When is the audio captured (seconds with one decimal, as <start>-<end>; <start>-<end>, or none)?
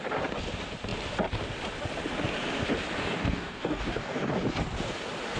0.0-3.0; 4.3-5.4